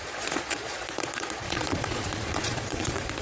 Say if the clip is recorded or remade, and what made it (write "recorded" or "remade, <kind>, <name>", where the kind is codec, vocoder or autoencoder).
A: remade, vocoder, Vocos